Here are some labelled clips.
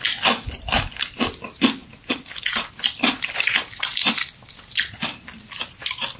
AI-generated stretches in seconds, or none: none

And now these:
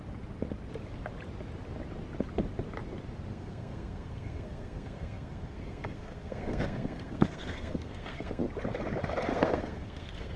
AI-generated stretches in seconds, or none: 3.3-8.4 (codec, SNAC); 9.3-10.4

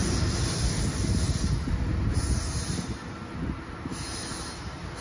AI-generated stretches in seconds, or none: none

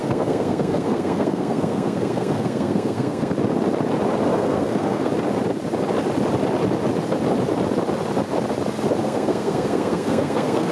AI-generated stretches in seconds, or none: 0.0-3.3 (codec, SNAC); 4.3-5.1; 9.0-10.7